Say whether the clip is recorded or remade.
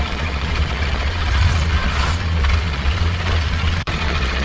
remade